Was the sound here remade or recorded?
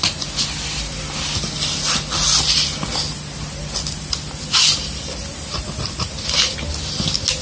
recorded